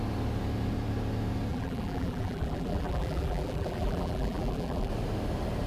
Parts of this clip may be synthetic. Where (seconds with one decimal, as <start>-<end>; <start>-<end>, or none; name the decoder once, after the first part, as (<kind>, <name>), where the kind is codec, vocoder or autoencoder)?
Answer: 1.5-4.9 (vocoder, BigVGAN v2)